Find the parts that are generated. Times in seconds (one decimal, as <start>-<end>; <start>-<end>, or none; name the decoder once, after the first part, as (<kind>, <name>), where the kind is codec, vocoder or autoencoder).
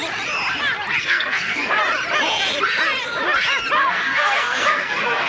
1.0-1.8 (codec, SNAC); 3.9-5.3